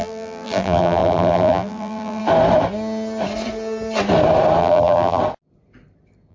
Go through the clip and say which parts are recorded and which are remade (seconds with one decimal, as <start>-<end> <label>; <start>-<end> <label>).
0.0-2.2 remade; 2.2-4.6 recorded; 4.6-5.2 remade; 5.2-6.3 recorded